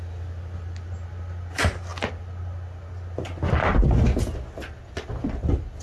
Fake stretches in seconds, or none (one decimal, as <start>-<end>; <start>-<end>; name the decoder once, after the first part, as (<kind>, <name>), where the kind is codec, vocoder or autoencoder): none